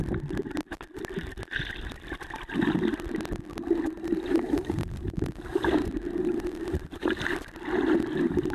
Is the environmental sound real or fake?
real